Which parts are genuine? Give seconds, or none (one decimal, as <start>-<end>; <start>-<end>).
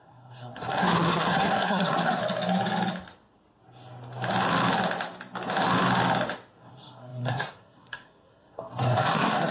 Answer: 2.2-6.6